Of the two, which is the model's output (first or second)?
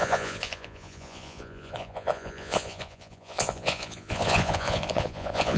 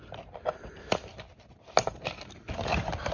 first